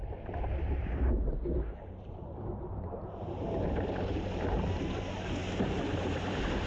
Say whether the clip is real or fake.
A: fake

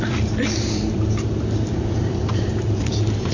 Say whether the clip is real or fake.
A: fake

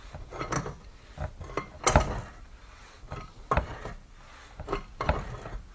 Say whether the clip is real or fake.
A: real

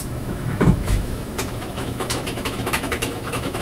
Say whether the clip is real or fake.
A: fake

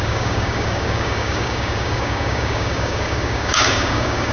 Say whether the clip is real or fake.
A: fake